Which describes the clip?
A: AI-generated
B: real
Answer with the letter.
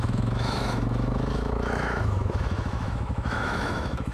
A